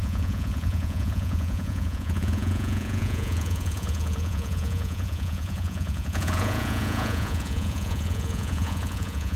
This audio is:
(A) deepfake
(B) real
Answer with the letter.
A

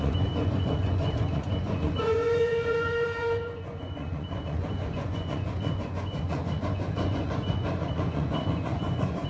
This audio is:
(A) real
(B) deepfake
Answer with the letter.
B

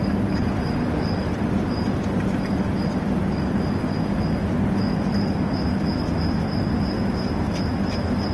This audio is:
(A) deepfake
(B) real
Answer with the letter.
B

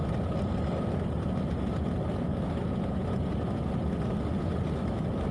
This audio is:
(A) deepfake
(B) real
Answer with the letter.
B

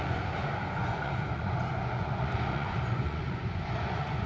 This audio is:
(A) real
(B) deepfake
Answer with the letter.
B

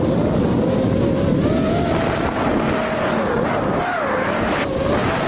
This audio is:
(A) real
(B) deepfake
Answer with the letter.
A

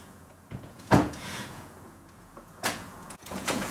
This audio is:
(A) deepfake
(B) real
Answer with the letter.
A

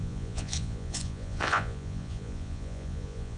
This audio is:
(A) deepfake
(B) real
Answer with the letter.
A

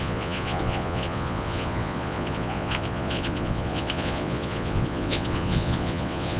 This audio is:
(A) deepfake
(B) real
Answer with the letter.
A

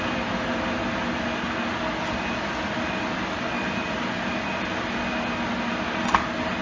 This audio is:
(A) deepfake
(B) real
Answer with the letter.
B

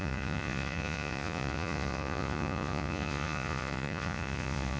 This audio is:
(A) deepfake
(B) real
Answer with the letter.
A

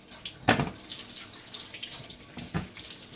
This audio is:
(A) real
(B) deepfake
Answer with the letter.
A